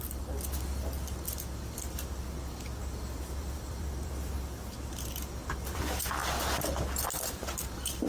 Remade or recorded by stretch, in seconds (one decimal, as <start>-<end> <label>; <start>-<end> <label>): 0.0-2.8 recorded; 2.8-4.3 remade; 4.3-8.1 recorded

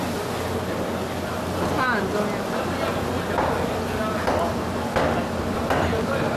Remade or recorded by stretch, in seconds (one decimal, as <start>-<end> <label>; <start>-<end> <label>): 0.0-6.4 recorded

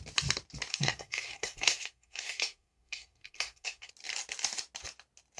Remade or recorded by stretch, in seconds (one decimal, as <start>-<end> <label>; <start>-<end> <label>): 0.0-0.7 recorded; 0.7-3.9 remade; 3.9-5.4 recorded

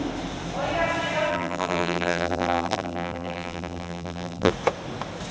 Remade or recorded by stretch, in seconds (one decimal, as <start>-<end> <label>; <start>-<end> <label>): 0.0-1.3 recorded; 1.3-4.5 remade; 4.5-5.3 recorded

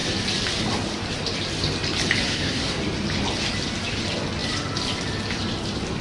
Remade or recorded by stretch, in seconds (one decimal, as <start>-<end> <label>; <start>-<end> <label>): 0.0-2.2 recorded; 2.2-2.8 remade; 2.8-6.0 recorded